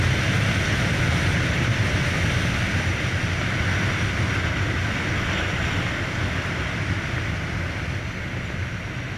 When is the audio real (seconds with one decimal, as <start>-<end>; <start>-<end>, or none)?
0.0-9.2